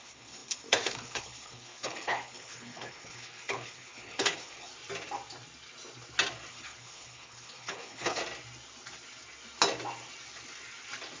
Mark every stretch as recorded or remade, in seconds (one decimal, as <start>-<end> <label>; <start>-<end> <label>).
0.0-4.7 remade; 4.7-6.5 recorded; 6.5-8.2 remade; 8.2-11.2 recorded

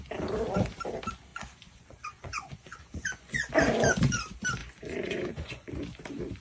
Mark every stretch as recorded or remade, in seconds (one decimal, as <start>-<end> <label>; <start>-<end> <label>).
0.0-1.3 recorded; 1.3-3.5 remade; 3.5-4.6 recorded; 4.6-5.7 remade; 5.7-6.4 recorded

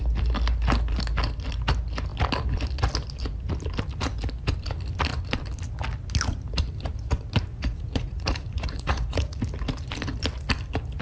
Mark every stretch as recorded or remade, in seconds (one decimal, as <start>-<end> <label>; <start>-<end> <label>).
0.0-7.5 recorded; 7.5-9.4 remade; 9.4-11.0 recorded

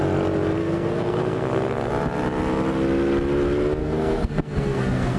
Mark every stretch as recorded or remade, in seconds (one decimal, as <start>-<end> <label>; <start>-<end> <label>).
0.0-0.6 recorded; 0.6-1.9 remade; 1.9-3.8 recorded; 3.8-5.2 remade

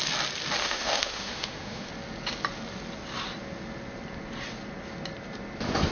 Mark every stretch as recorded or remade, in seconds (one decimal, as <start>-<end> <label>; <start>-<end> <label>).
0.0-0.6 recorded; 0.6-1.9 remade; 1.9-5.9 recorded

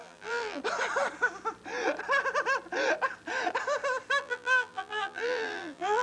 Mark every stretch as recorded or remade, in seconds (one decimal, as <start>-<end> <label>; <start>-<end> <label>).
0.0-0.6 remade; 0.6-4.2 recorded; 4.2-6.0 remade

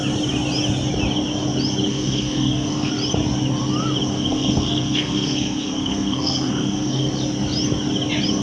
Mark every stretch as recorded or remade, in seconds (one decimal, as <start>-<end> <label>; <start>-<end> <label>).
0.0-1.9 recorded; 1.9-2.9 remade; 2.9-4.1 recorded; 4.1-7.1 remade; 7.1-8.4 recorded